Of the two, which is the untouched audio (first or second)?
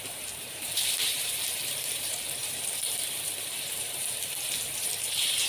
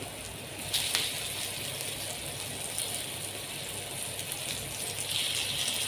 second